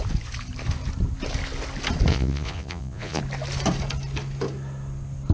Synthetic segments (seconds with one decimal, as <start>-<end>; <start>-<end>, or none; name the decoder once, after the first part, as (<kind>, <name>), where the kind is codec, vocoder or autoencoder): 2.1-3.2 (vocoder, Vocos)